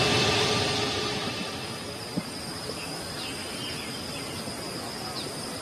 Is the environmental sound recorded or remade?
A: remade